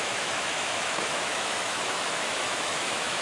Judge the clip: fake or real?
fake